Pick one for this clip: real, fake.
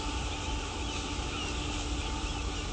real